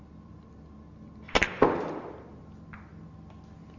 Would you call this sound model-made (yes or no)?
no